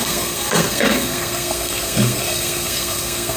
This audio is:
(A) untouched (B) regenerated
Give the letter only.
B